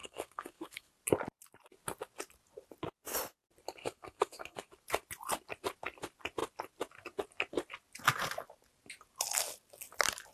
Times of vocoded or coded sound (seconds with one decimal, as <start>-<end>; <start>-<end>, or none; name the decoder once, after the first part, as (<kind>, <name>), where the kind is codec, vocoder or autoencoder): 0.0-0.9 (codec, SNAC); 3.8-4.7